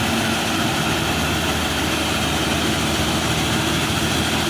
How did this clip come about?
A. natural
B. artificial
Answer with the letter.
A